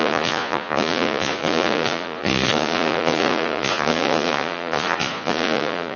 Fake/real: fake